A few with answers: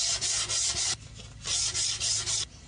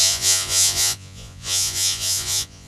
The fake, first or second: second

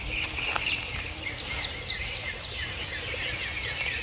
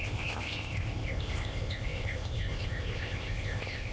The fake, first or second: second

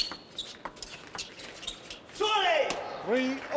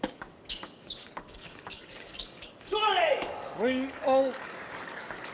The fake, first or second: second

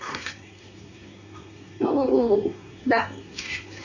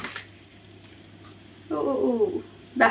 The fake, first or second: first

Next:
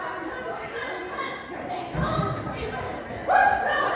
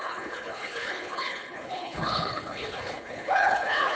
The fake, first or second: second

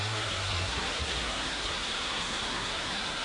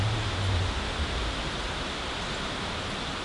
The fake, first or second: first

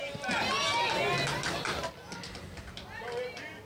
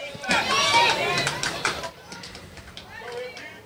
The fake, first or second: second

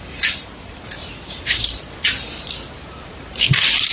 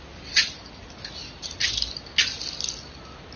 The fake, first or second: first